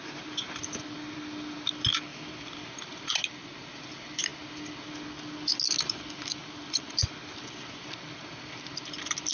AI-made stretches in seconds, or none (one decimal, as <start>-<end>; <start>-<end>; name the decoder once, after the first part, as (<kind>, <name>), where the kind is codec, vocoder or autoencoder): 0.0-0.6 (vocoder, BigVGAN v2); 2.1-3.0; 6.4-7.2